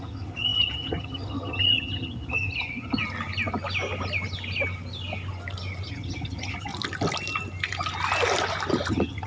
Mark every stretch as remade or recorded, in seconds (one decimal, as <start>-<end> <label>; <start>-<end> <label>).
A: 0.0-3.0 remade; 3.0-5.9 recorded; 5.9-6.7 remade; 6.7-8.9 recorded; 8.9-9.3 remade